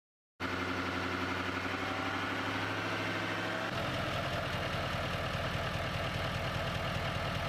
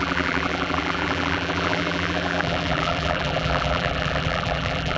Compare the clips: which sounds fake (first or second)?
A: second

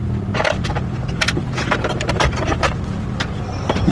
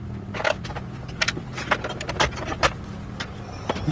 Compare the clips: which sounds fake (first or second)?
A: first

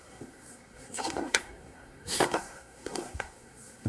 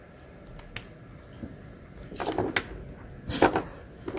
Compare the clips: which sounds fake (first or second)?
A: first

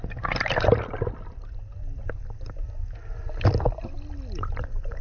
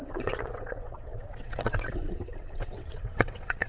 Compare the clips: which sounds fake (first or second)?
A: second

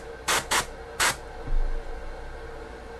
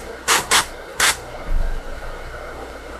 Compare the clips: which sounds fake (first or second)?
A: second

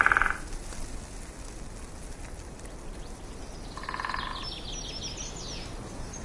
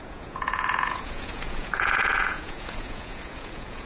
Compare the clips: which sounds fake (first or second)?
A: second